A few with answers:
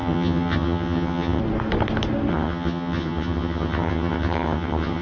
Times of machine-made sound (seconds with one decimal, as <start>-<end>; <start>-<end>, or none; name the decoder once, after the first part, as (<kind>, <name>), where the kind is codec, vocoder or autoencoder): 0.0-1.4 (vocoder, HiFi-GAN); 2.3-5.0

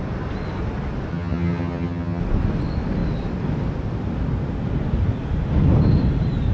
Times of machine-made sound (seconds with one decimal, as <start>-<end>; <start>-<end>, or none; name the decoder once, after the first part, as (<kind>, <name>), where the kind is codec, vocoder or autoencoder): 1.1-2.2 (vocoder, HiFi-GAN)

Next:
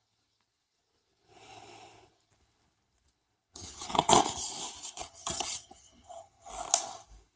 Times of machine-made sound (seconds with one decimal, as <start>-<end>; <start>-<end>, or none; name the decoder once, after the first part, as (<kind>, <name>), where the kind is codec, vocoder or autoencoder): 3.5-4.2 (vocoder, HiFi-GAN); 5.0-6.5